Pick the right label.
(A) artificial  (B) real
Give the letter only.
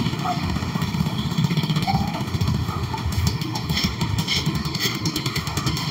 A